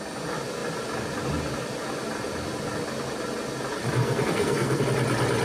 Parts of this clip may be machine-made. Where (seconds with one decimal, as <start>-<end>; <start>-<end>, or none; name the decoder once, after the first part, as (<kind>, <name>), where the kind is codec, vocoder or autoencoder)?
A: 4.0-4.8 (codec, SNAC)

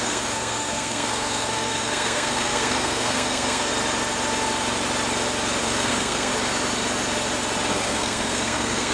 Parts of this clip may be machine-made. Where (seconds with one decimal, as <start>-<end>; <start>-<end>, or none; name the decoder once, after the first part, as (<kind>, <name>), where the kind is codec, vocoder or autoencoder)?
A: 0.0-3.7 (codec, SNAC); 5.6-6.3; 7.7-8.9